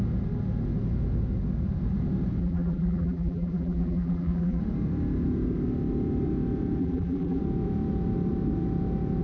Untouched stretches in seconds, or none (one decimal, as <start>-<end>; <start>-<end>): 0.0-2.4; 4.6-6.8; 7.4-9.2